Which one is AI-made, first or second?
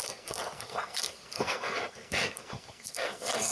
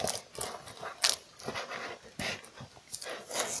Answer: first